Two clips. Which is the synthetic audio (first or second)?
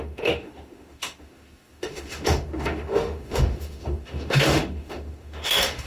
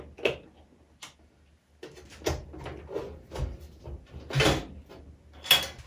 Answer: first